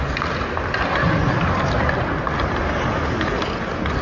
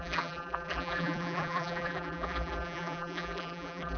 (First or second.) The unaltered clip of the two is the first